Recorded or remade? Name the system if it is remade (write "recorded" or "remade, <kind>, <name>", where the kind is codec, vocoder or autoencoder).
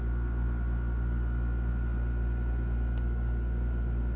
recorded